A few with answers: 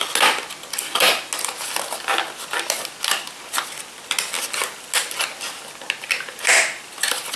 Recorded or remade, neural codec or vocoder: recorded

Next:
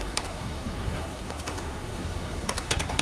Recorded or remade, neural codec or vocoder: remade, codec, SNAC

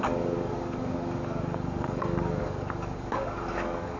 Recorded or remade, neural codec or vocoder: remade, codec, DAC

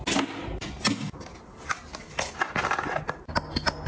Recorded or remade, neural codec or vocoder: recorded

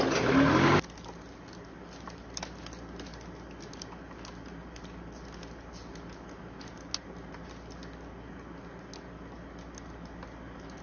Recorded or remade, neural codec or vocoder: recorded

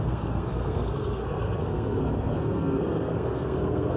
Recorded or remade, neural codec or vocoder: remade, codec, SNAC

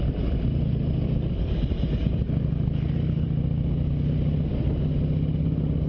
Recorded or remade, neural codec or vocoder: recorded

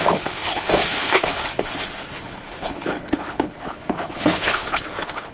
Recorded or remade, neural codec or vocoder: remade, codec, HILCodec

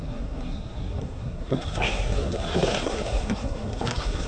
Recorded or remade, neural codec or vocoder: remade, codec, SNAC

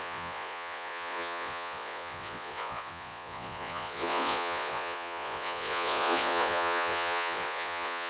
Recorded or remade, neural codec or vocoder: remade, vocoder, Vocos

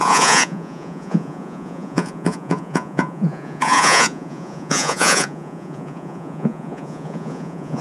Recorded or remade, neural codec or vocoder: remade, vocoder, Vocos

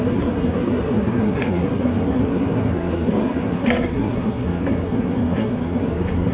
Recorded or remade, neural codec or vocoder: remade, codec, SNAC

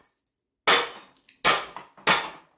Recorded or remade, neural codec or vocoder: recorded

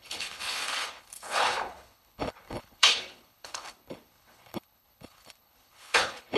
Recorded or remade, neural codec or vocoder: remade, codec, HILCodec